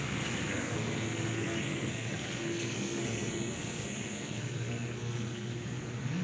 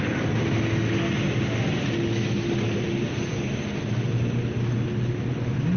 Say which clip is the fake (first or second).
first